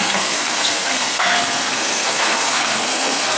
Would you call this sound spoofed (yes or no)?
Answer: yes